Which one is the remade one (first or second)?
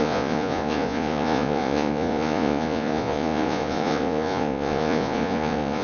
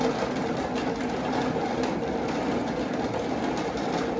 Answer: first